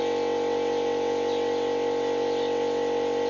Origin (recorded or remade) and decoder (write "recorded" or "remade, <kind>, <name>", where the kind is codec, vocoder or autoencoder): recorded